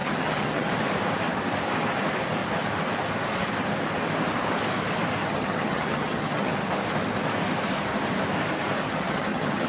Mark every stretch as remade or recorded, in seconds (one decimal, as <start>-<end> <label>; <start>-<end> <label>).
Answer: 0.0-0.7 remade; 0.7-5.2 recorded; 5.2-6.6 remade; 6.6-8.8 recorded; 8.8-9.7 remade